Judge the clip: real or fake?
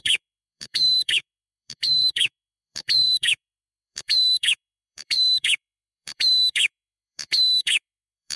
fake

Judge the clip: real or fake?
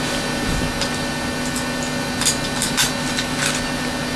real